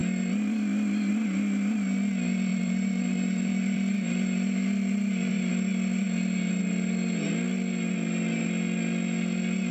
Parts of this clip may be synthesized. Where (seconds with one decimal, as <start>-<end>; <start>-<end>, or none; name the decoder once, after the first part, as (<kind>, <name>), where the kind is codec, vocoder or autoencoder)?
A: 2.5-5.5 (vocoder, BigVGAN v2)